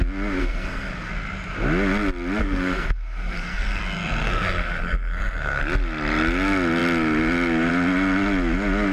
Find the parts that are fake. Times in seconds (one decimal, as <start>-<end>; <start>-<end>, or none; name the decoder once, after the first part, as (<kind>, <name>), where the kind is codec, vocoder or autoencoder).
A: 0.4-1.1 (codec, SNAC); 2.4-3.8; 4.2-5.6